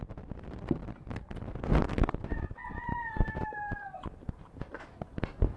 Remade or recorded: remade